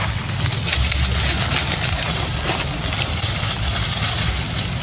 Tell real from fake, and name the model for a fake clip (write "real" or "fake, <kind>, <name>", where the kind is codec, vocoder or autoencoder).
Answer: real